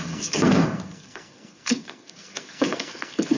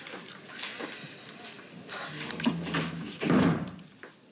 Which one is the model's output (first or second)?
first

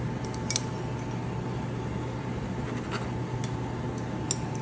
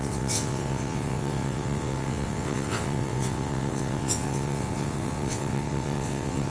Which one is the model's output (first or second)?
second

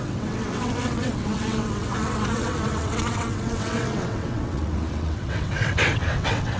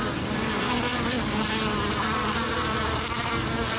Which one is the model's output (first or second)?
first